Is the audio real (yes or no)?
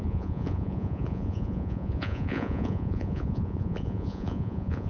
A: no